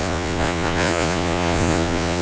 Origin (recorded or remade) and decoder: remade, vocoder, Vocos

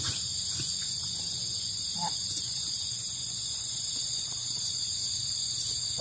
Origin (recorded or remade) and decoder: remade, vocoder, Vocos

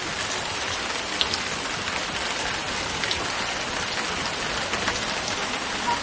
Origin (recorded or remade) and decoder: recorded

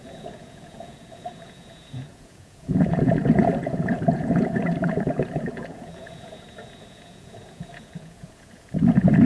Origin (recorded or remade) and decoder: remade, vocoder, Vocos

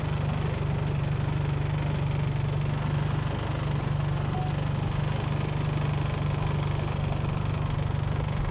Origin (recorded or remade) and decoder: recorded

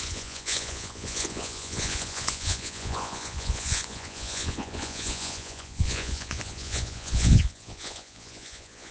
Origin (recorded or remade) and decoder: remade, vocoder, Vocos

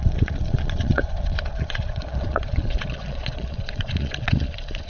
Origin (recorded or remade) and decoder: remade, vocoder, Vocos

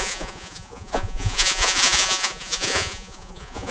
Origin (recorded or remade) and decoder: remade, vocoder, Vocos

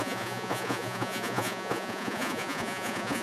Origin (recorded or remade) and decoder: remade, vocoder, Vocos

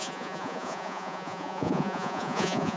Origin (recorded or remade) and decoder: remade, vocoder, Vocos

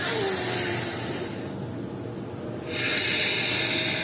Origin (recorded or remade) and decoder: recorded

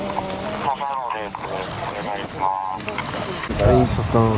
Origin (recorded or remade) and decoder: recorded